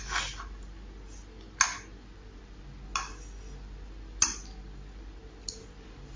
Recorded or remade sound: recorded